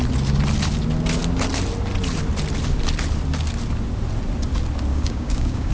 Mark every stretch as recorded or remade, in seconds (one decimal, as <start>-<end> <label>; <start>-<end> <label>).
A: 0.0-4.9 recorded; 4.9-5.7 remade